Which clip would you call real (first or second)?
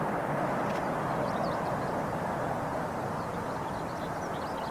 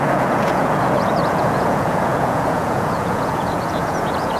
first